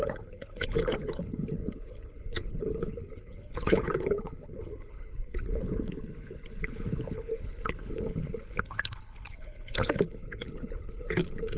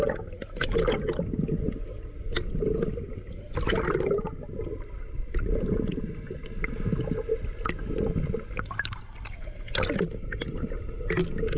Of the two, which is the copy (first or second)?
first